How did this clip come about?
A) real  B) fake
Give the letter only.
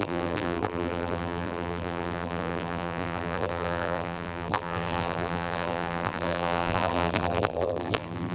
B